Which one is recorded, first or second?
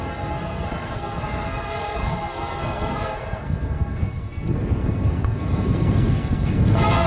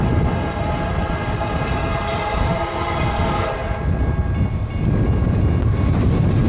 second